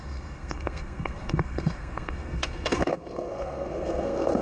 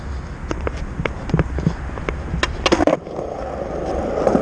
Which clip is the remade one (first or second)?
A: first